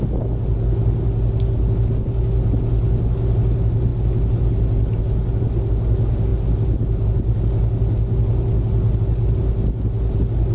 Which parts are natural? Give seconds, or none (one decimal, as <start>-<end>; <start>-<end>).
0.0-10.5